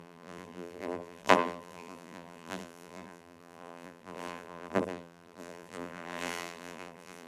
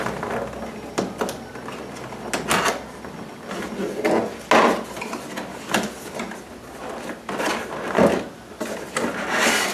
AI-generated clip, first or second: first